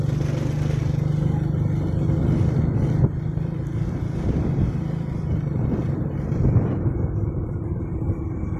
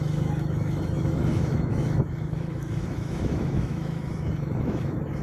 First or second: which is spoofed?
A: second